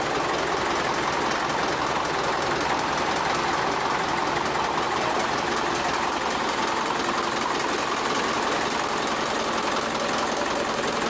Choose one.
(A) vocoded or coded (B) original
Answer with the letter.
B